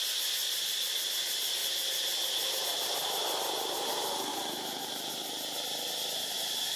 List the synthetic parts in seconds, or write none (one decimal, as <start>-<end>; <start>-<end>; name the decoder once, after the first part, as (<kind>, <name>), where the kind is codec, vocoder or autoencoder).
4.3-5.1 (vocoder, BigVGAN v2)